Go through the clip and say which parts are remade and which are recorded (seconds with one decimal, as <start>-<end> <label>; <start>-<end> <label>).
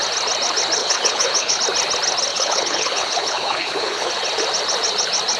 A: 0.0-0.8 recorded; 0.8-1.6 remade; 1.6-2.3 recorded; 2.3-4.1 remade; 4.1-5.4 recorded